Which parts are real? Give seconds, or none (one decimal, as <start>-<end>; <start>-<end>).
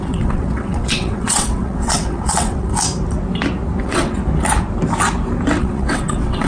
2.7-3.8; 4.2-5.6